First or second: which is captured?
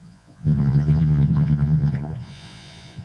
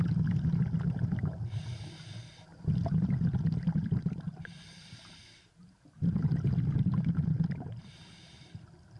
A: second